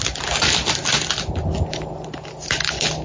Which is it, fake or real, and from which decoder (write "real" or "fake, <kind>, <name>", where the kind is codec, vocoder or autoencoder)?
real